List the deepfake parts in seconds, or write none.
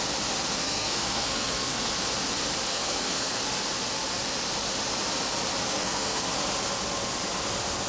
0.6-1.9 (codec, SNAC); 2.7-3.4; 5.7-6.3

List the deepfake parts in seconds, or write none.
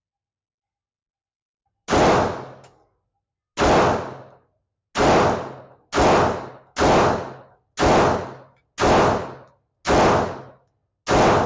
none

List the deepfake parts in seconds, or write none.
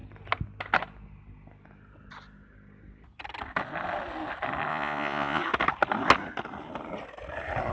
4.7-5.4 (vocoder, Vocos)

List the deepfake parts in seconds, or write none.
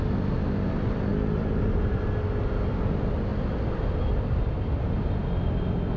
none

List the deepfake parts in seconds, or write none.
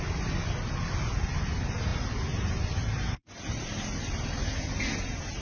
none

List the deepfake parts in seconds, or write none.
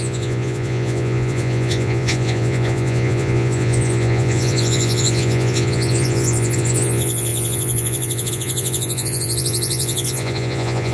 0.0-10.9 (vocoder, Vocos)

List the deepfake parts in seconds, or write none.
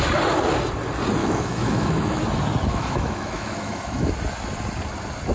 1.2-2.2 (autoencoder, DAC-VAE); 2.7-4.1